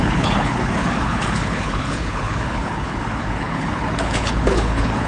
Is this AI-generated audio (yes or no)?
yes